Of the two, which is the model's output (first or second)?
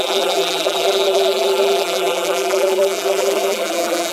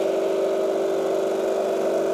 first